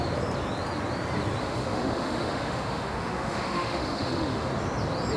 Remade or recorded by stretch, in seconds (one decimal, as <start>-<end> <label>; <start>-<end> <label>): 0.0-1.4 recorded; 1.4-4.5 remade; 4.5-5.2 recorded